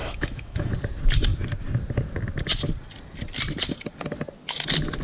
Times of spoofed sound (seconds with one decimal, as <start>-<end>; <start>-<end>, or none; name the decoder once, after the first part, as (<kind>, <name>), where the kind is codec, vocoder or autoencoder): 0.0-0.7 (autoencoder, DAC-VAE)